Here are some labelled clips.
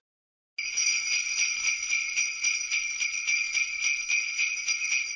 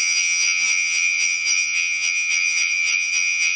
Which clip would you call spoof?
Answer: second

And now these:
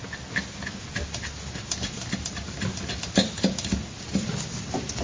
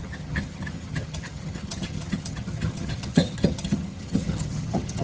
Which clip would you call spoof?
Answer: second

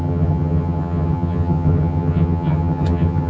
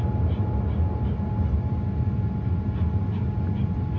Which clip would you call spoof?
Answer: first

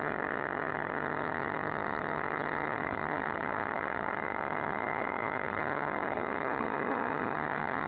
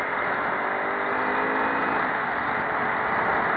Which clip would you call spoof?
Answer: first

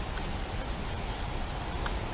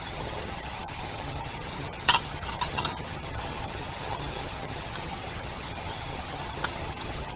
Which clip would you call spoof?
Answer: second